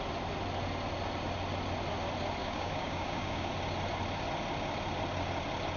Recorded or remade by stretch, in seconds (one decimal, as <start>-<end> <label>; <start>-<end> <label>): 0.0-2.4 recorded; 2.4-3.5 remade; 3.5-5.8 recorded